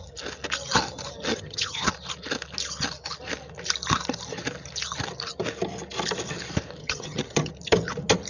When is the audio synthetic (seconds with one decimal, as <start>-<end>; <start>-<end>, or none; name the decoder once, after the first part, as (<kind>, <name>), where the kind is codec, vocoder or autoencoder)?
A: 1.3-1.9 (vocoder, HiFi-GAN); 6.8-7.5